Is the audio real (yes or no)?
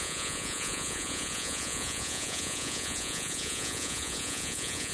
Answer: no